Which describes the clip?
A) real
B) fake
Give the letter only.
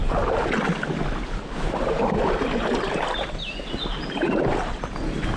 A